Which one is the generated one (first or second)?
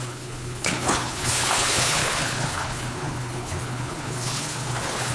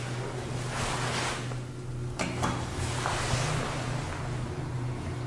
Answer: first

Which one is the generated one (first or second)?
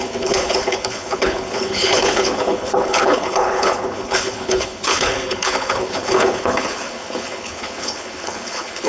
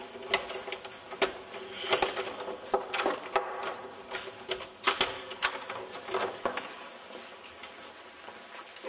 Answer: first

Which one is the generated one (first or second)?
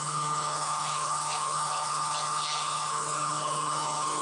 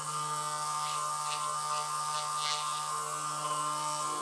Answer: first